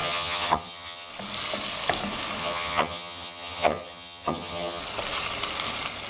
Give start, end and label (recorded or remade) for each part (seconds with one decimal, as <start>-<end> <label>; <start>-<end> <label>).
0.0-1.1 remade; 1.1-2.4 recorded; 2.4-4.8 remade; 4.8-6.1 recorded